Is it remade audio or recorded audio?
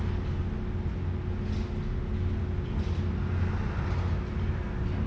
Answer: recorded